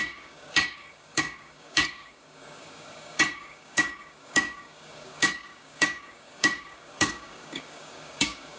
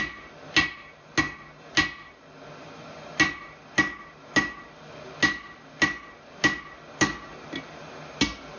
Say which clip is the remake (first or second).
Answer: first